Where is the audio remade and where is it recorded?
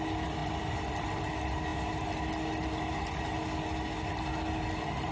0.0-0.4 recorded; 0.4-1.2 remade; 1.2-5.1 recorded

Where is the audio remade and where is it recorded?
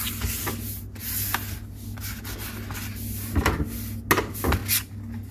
0.0-5.3 recorded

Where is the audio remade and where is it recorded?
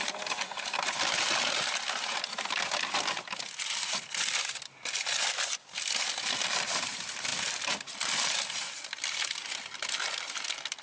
0.0-7.3 recorded; 7.3-10.3 remade; 10.3-10.8 recorded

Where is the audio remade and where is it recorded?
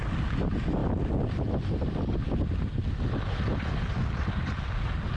0.0-5.2 recorded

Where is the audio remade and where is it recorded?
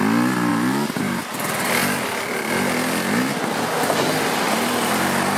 0.0-0.5 recorded; 0.5-1.2 remade; 1.2-5.4 recorded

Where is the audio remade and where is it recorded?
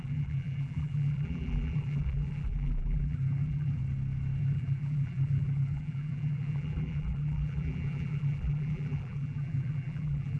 0.0-3.8 remade; 3.8-4.4 recorded; 4.4-10.4 remade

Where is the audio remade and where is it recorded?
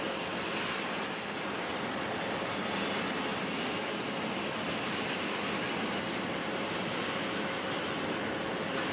0.0-8.9 recorded